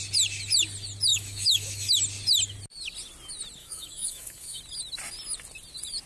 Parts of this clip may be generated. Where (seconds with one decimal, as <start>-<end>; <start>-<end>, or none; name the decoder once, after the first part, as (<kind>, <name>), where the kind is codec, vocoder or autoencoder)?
1.1-1.9 (autoencoder, DAC-VAE); 3.6-4.6